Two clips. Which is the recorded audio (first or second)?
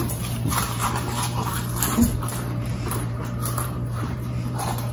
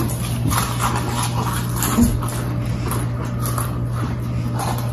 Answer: second